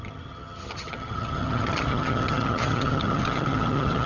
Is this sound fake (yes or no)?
yes